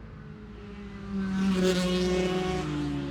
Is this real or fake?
real